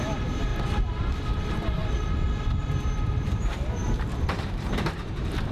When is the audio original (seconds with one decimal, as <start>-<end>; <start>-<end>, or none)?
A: 0.5-1.3; 1.8-3.2